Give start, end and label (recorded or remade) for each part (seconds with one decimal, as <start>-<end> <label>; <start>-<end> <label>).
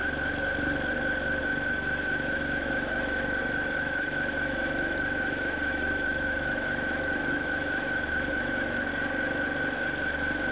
0.0-1.4 recorded; 1.4-8.9 remade; 8.9-10.5 recorded